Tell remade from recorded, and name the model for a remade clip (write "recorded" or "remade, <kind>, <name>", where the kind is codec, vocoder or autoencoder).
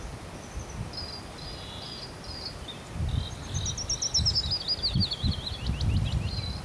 recorded